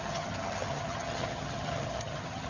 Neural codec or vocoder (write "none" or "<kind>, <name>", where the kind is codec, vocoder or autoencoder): vocoder, HiFi-GAN